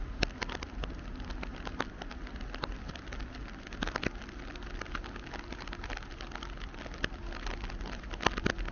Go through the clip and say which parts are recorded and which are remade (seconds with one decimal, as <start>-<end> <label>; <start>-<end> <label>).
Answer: 0.0-8.7 recorded